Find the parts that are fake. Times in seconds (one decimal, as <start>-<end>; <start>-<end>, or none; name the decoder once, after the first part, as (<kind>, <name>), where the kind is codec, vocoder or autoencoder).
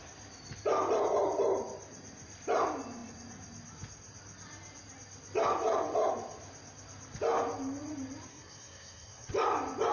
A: 8.3-9.3 (codec, SNAC)